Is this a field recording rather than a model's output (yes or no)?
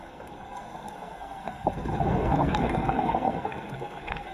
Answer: no